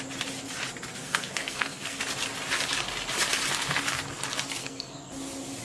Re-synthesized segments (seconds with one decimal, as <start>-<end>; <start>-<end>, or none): 0.9-2.0; 4.6-5.1